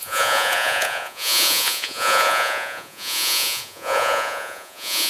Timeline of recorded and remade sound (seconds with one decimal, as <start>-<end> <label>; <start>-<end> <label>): 0.0-5.1 remade